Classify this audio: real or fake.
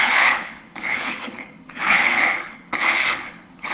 fake